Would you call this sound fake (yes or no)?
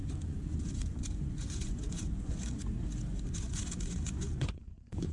yes